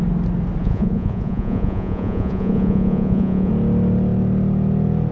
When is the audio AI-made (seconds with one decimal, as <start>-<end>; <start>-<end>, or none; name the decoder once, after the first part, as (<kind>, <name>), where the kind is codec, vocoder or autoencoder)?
0.6-3.5 (vocoder, Vocos)